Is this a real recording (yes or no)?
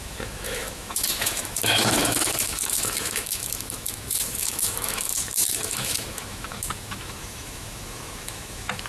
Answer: no